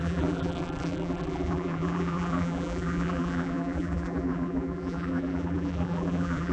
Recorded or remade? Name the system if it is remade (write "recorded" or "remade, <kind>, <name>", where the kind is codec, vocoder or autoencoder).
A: remade, vocoder, BigVGAN v2